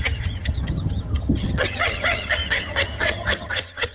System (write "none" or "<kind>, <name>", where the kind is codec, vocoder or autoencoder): vocoder, HiFi-GAN